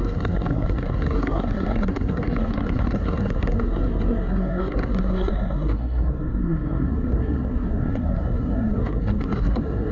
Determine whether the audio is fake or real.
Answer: fake